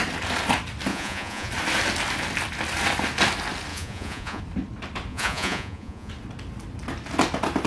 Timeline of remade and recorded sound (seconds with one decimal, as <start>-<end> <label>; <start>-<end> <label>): 0.0-0.9 recorded; 0.9-1.5 remade; 1.5-3.7 recorded; 3.7-4.4 remade; 4.4-5.1 recorded; 5.1-6.1 remade; 6.1-7.7 recorded